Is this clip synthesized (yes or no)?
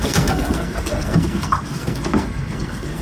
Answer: yes